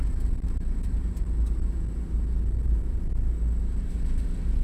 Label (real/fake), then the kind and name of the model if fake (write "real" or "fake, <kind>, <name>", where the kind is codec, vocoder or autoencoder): real